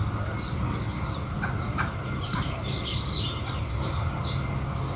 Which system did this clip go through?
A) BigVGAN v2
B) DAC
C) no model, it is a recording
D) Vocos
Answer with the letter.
C